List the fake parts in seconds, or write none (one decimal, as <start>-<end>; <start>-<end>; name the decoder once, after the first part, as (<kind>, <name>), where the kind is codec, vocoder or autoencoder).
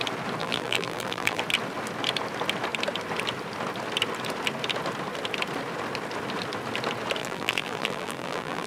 0.4-1.4 (vocoder, BigVGAN v2); 7.2-8.7